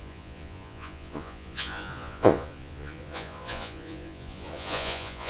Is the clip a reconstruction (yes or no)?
yes